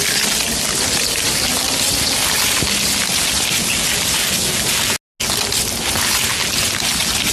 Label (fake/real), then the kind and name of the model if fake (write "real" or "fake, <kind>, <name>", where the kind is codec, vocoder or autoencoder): real